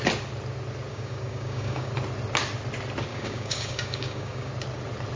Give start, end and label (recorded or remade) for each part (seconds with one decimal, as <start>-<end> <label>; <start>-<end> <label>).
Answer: 0.0-0.9 recorded; 0.9-1.9 remade; 1.9-3.1 recorded; 3.1-4.5 remade; 4.5-5.2 recorded